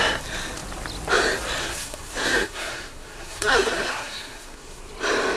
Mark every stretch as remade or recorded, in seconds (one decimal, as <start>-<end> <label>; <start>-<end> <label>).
0.0-1.6 recorded; 1.6-4.8 remade; 4.8-5.4 recorded